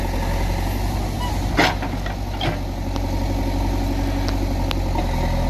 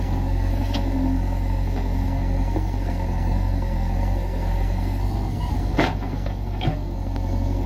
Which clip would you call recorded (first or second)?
first